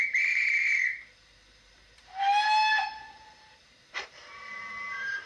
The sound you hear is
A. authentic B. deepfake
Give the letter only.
B